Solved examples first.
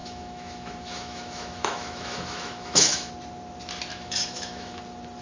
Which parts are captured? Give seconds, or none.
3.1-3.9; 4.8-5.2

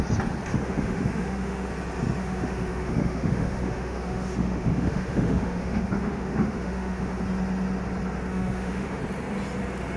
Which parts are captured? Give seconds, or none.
0.0-0.5; 1.7-2.2; 7.2-8.3; 9.0-10.0

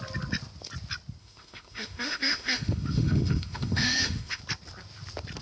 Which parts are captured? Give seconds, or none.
0.0-1.2; 4.4-5.4

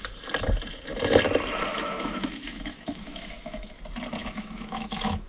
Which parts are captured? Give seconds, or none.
0.0-1.7; 3.8-4.2

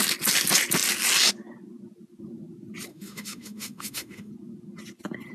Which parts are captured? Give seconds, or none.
0.0-2.9; 4.3-5.3

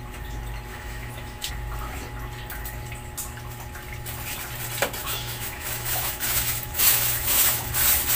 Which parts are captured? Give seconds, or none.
0.0-0.7; 1.5-5.0; 7.7-8.2

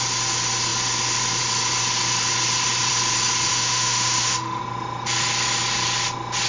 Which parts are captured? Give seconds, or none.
0.0-3.5; 4.6-6.5

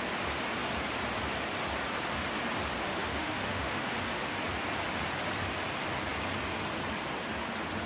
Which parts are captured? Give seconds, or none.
0.0-2.8; 3.9-7.9